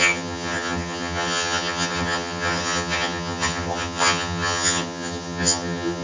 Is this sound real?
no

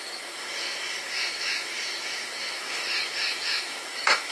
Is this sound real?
no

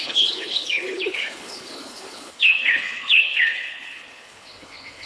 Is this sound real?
no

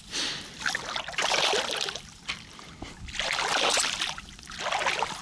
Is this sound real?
yes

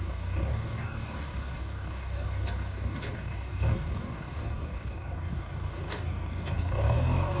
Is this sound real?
no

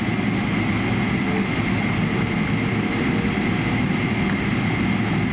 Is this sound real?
yes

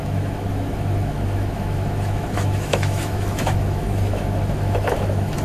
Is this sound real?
no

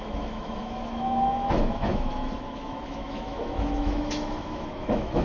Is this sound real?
no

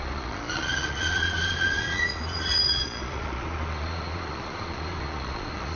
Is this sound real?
no